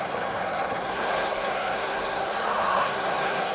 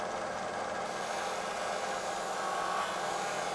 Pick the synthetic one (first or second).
first